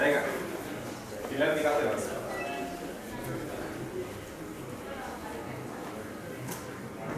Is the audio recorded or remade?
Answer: recorded